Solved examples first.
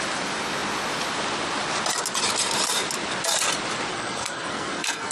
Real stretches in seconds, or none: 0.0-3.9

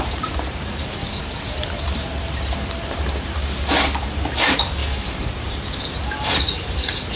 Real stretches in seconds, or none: none